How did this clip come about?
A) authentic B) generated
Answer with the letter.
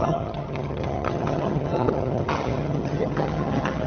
B